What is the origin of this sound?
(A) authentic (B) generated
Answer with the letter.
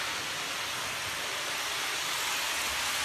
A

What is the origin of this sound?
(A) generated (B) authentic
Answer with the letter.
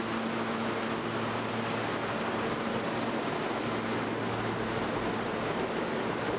B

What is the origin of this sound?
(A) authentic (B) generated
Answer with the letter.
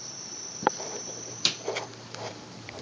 B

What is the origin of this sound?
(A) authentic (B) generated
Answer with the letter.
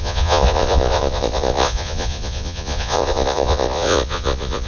B